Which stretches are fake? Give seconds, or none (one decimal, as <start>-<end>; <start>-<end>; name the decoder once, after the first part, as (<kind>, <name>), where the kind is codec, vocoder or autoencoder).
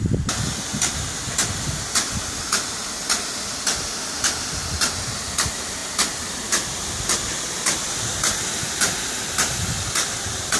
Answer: none